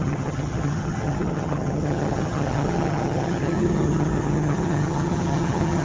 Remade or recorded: remade